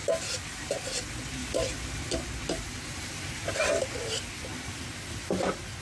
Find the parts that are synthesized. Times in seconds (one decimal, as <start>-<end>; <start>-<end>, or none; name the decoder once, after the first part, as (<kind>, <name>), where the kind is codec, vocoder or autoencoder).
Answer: none